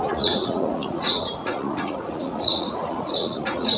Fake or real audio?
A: fake